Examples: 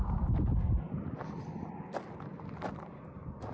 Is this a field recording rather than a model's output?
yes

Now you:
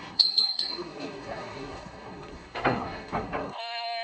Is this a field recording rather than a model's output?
no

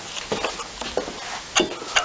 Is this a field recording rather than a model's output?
yes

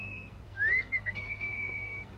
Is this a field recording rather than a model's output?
no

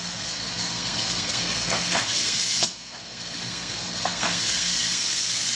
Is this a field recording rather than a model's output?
no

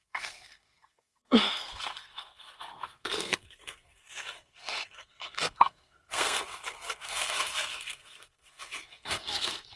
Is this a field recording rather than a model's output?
no